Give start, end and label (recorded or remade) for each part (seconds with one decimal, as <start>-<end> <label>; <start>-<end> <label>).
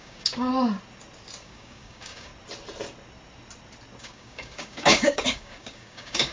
0.0-0.5 remade; 0.5-1.4 recorded; 1.4-2.3 remade; 2.3-4.0 recorded; 4.0-6.3 remade